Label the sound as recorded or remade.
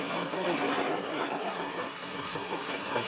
remade